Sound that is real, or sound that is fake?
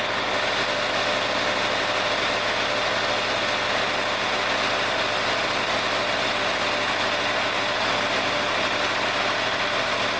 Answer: real